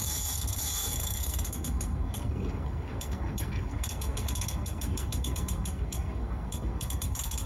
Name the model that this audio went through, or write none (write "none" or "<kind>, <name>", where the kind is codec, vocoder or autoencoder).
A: codec, SNAC